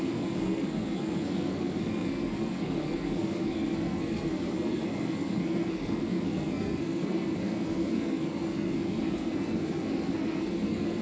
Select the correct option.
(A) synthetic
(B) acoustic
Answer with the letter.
A